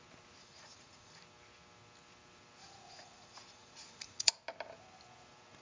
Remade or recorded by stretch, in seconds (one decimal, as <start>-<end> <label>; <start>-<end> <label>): 0.0-0.4 recorded; 0.4-1.2 remade; 1.2-2.6 recorded; 2.6-4.3 remade; 4.3-5.6 recorded